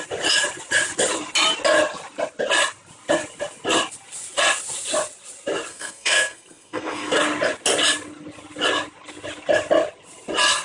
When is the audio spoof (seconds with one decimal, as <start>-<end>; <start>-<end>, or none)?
5.7-7.2

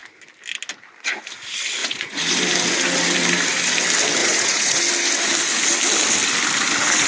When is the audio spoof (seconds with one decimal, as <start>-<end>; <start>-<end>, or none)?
1.8-2.4; 4.2-4.8

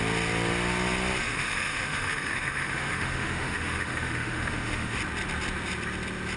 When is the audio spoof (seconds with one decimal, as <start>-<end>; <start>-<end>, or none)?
1.2-5.0

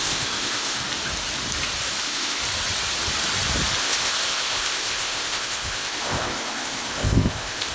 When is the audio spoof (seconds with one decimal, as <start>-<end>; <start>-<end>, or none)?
0.0-0.8; 2.0-2.4; 3.8-7.7